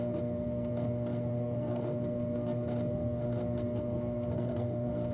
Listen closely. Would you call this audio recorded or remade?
remade